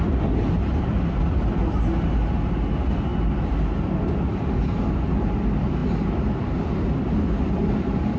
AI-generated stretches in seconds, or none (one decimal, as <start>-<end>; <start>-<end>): none